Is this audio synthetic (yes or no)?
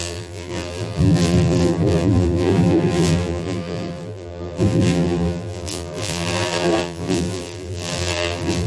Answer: yes